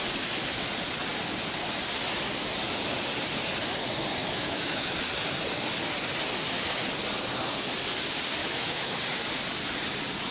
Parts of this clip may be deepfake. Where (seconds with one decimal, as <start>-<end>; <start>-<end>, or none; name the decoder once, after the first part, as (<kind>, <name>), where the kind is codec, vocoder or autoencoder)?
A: 4.2-4.9 (autoencoder, DAC-VAE); 8.4-9.0